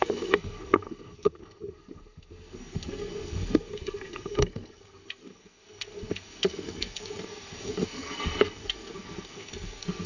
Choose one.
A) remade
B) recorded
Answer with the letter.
A